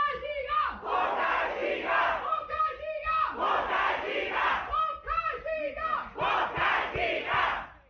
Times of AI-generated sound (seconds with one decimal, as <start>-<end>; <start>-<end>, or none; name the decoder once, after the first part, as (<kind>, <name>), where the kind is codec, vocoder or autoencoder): none